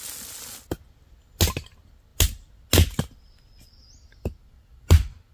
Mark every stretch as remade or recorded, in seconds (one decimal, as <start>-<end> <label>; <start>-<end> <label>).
0.0-5.3 recorded